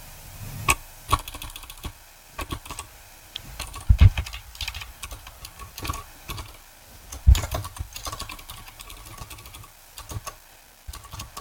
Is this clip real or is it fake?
real